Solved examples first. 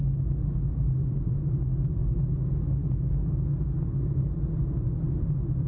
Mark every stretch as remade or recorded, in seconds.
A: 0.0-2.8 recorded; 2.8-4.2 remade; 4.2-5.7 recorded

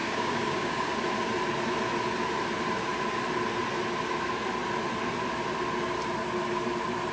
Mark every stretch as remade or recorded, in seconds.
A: 0.0-0.9 remade; 0.9-7.1 recorded

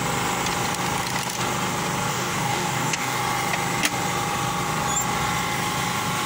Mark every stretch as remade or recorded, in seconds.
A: 0.0-2.1 recorded; 2.1-3.2 remade; 3.2-6.3 recorded

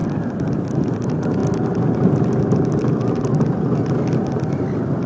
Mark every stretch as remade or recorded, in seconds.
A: 0.0-5.1 recorded

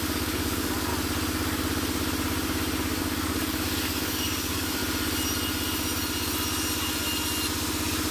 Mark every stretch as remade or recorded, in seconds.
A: 0.0-0.9 remade; 0.9-3.0 recorded; 3.0-4.8 remade; 4.8-8.1 recorded

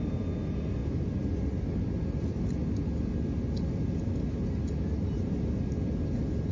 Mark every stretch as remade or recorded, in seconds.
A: 0.0-6.5 recorded

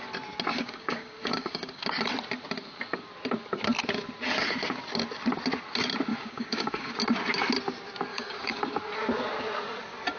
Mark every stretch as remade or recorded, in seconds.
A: 0.0-0.5 recorded; 0.5-1.8 remade; 1.8-6.1 recorded; 6.1-6.9 remade; 6.9-8.1 recorded; 8.1-8.6 remade; 8.6-10.2 recorded